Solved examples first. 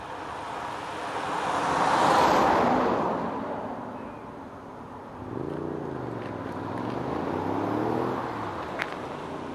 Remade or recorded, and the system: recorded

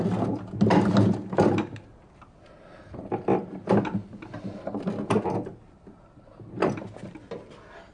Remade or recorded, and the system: recorded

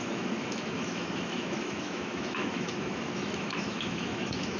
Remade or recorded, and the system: remade, autoencoder, DAC-VAE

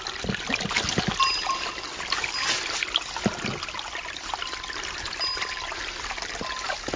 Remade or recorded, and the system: recorded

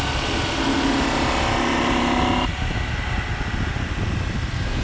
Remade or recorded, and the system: recorded